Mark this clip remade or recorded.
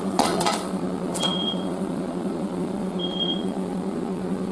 remade